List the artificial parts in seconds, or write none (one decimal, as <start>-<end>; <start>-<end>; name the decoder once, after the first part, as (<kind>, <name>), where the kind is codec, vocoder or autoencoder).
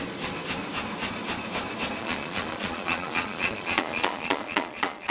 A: 2.0-5.1 (vocoder, Vocos)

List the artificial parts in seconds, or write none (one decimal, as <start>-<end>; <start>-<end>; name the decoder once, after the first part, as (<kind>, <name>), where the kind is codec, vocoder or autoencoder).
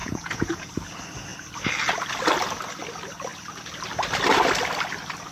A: 0.0-0.7 (vocoder, Vocos)